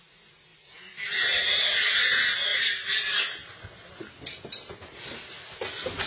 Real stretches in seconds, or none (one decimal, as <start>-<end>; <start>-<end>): 0.0-6.1